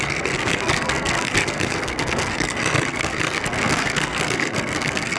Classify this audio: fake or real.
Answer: fake